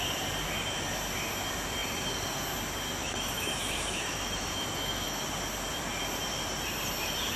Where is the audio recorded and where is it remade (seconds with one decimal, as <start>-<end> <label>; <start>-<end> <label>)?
0.0-3.0 recorded; 3.0-5.2 remade; 5.2-7.4 recorded